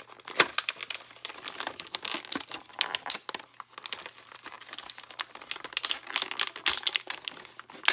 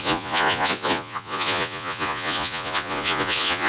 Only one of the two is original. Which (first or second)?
first